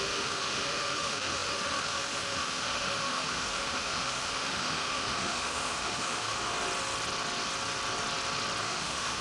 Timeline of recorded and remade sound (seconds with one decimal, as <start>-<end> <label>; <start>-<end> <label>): 0.0-6.5 remade; 6.5-8.6 recorded; 8.6-9.2 remade